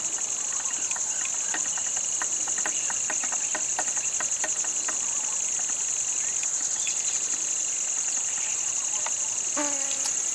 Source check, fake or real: real